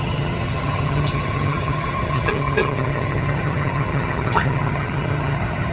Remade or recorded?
remade